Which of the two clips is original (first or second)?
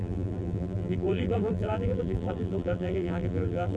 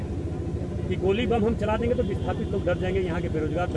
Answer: second